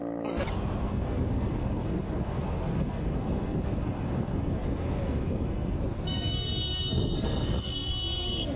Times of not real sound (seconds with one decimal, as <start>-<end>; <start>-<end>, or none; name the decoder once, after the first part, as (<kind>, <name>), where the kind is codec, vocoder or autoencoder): 0.8-8.6 (codec, SNAC)

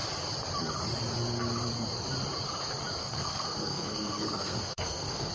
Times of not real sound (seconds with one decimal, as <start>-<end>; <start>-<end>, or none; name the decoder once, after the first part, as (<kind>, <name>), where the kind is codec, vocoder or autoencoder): 3.0-5.3 (codec, SNAC)

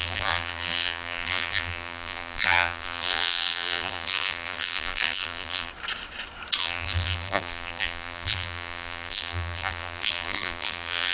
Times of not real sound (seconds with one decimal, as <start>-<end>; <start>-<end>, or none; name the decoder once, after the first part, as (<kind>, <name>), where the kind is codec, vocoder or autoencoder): 0.0-5.7 (vocoder, BigVGAN v2); 6.6-11.1

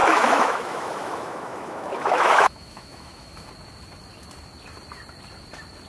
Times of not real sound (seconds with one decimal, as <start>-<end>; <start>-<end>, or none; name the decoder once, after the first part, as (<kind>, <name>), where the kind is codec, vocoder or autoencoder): 0.0-3.5 (autoencoder, DAC-VAE)

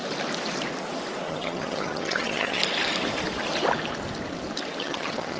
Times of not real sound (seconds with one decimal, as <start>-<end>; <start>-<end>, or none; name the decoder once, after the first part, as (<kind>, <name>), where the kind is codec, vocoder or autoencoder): 1.3-2.6 (vocoder, HiFi-GAN); 4.8-5.4

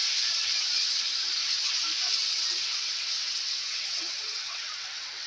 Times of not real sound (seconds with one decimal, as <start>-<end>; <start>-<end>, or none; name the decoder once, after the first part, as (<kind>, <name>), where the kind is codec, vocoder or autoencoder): 2.2-5.3 (vocoder, WaveNeXt)